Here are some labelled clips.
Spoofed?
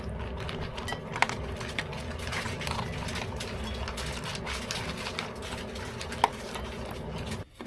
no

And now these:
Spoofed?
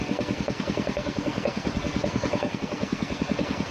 yes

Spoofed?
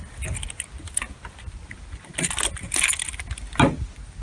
no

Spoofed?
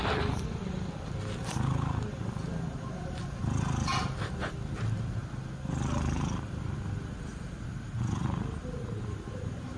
no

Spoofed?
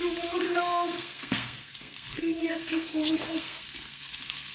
yes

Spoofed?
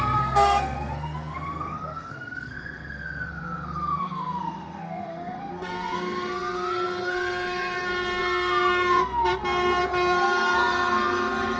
yes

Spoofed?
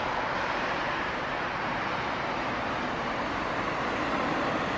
no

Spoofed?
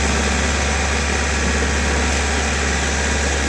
no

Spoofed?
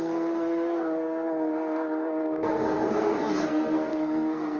yes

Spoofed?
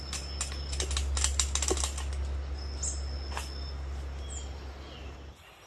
no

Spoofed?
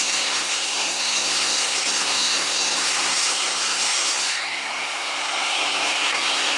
yes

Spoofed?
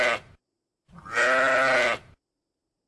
no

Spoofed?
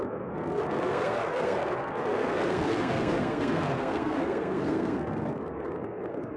yes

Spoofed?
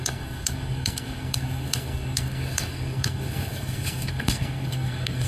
yes